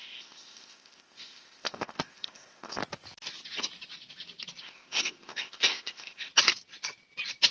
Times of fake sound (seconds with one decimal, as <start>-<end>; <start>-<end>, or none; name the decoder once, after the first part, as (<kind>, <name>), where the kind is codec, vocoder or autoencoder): 0.0-2.8 (codec, ZipCodec); 4.6-6.3